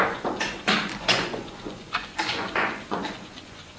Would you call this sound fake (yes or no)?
yes